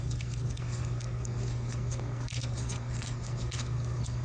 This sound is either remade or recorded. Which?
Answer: remade